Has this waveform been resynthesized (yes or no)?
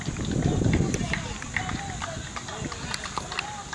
yes